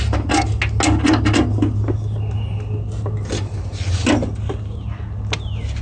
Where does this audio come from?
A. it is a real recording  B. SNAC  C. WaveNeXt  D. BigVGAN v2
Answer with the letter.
A